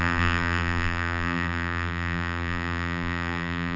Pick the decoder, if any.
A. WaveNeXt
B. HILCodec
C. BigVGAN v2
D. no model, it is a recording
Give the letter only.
C